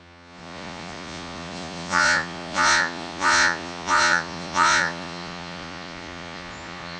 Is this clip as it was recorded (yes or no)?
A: no